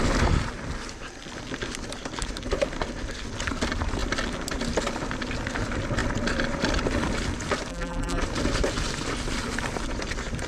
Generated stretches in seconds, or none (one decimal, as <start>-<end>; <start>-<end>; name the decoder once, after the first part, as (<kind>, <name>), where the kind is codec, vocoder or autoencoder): 7.7-8.2 (vocoder, BigVGAN v2)